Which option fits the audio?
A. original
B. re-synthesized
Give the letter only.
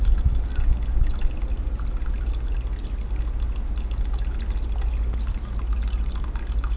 A